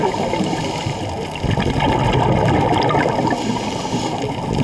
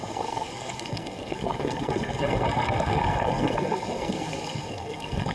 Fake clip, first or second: second